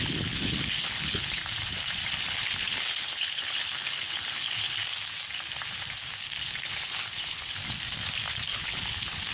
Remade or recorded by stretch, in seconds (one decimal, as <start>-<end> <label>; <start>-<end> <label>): 0.0-1.4 remade; 1.4-2.2 recorded; 2.2-4.8 remade; 4.8-6.5 recorded; 6.5-7.6 remade; 7.6-8.5 recorded; 8.5-9.3 remade